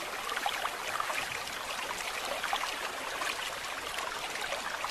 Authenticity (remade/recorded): recorded